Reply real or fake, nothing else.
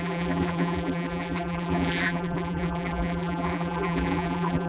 fake